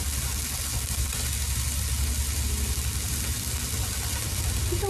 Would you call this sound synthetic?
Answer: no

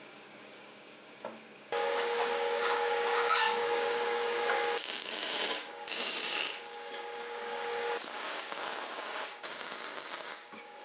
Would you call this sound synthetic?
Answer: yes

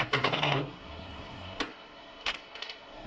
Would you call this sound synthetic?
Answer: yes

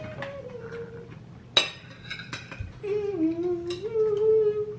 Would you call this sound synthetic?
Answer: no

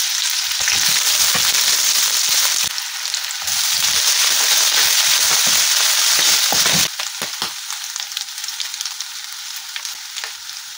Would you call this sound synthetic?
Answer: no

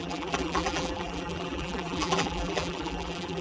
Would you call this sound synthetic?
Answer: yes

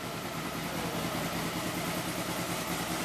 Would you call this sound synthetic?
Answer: no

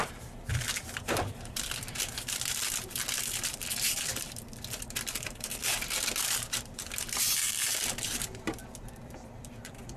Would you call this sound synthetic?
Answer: yes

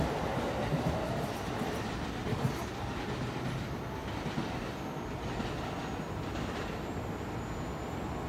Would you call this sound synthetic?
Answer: no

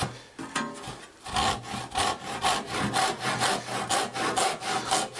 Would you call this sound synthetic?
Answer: no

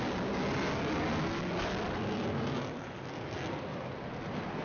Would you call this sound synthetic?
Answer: no